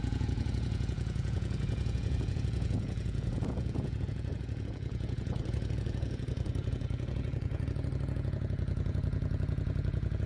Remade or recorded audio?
remade